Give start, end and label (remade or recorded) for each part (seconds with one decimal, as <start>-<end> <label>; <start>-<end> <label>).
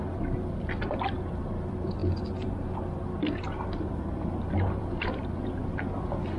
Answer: 0.0-2.0 remade; 2.0-4.2 recorded; 4.2-5.6 remade; 5.6-6.4 recorded